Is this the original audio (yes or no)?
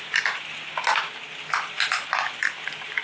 yes